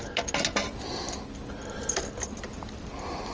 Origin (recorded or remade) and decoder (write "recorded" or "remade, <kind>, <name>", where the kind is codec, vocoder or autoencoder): recorded